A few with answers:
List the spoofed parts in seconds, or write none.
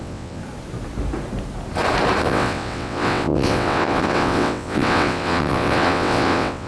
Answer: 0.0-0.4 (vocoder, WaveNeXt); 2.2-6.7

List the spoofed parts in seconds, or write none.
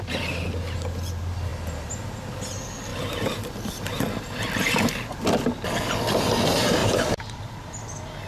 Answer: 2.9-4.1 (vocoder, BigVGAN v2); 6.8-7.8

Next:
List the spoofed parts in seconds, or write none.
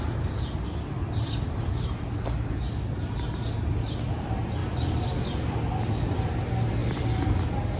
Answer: none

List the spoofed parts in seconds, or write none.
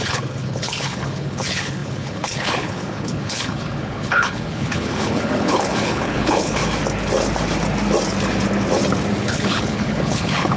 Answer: 0.0-6.6 (codec, HILCodec); 9.2-10.6